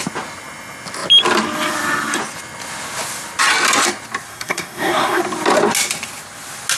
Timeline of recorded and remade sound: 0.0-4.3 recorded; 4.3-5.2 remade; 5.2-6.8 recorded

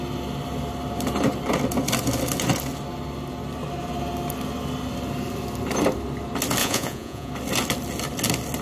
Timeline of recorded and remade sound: 0.0-6.6 recorded; 6.6-7.3 remade; 7.3-8.6 recorded

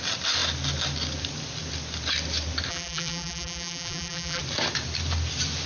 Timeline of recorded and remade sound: 0.0-2.7 recorded; 2.7-4.4 remade; 4.4-5.7 recorded